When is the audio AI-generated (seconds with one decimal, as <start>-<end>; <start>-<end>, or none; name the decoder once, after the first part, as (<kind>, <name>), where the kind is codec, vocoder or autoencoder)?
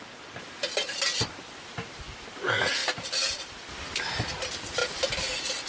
2.8-3.9 (vocoder, BigVGAN v2)